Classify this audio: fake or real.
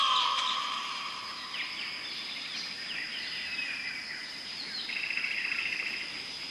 fake